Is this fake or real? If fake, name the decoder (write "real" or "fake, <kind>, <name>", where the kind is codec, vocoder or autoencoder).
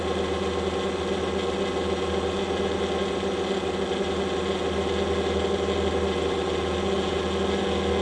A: real